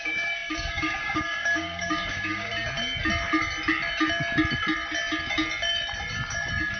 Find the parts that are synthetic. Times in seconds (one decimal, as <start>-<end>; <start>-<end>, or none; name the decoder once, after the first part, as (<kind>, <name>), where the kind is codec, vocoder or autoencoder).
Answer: 0.0-2.5 (codec, DAC)